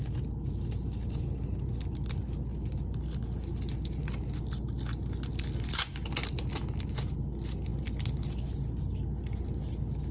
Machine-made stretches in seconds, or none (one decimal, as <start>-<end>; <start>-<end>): none